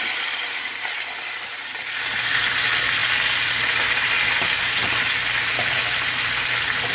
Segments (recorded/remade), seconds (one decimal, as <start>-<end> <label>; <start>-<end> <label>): 0.0-6.9 recorded